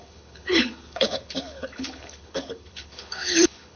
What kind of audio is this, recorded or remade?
remade